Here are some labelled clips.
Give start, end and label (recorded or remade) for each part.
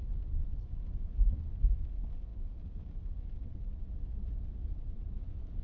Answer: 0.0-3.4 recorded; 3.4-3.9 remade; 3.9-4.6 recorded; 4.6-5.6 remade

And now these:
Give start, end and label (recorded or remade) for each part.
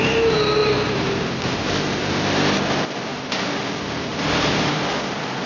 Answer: 0.0-0.6 recorded; 0.6-1.6 remade; 1.6-3.1 recorded; 3.1-3.6 remade; 3.6-4.1 recorded; 4.1-4.9 remade; 4.9-5.5 recorded